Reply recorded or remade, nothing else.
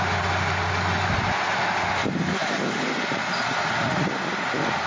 recorded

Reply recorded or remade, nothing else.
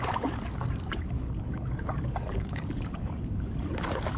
remade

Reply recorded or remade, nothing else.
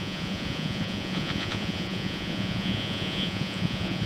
remade